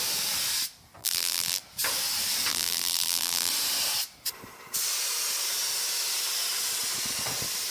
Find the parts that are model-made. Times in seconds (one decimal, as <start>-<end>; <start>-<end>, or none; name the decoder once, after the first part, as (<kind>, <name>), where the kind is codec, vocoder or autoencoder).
1.0-1.6 (vocoder, BigVGAN v2); 2.5-3.5